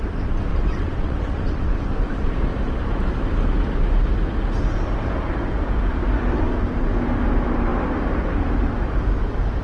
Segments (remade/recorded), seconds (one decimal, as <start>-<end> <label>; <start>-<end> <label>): 0.0-0.5 recorded; 0.5-1.8 remade; 1.8-9.6 recorded